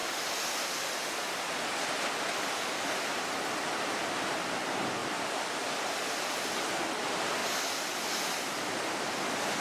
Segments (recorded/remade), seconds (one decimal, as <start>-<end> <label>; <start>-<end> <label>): 0.0-9.6 recorded